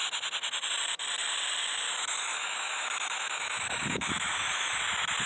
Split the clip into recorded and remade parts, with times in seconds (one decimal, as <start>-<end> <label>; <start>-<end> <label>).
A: 0.0-2.3 recorded; 2.3-4.8 remade; 4.8-5.3 recorded